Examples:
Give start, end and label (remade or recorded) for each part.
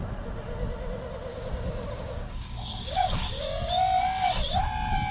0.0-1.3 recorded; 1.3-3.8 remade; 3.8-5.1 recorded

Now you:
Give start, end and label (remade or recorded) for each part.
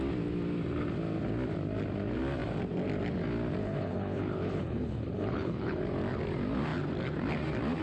0.0-3.6 recorded; 3.6-5.8 remade; 5.8-7.8 recorded